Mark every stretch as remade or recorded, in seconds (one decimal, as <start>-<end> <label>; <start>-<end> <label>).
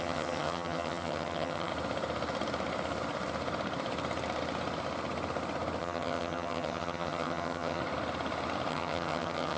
0.0-1.7 remade; 1.7-5.8 recorded; 5.8-7.8 remade; 7.8-8.7 recorded; 8.7-9.6 remade